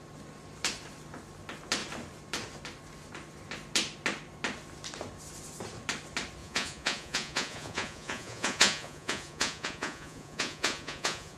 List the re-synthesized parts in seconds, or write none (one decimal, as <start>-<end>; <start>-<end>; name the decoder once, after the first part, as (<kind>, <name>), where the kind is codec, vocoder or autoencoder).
6.4-11.4 (vocoder, Vocos)